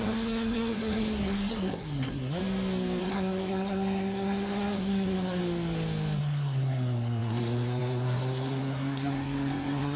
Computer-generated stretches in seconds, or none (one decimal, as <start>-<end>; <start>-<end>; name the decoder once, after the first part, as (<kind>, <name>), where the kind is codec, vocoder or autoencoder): 0.0-2.4 (codec, SNAC); 3.0-5.4; 6.2-10.0